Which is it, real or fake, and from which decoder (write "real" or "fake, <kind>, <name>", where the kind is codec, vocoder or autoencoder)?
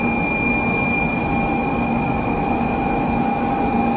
real